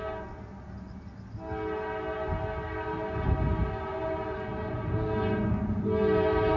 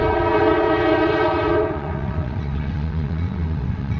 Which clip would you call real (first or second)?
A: first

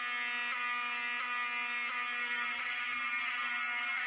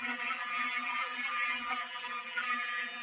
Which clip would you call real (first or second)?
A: first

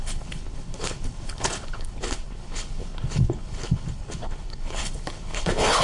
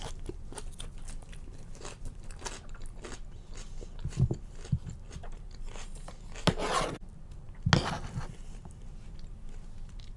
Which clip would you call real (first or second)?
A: second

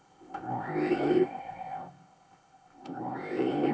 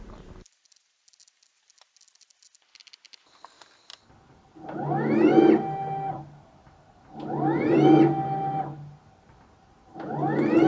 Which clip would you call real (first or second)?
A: second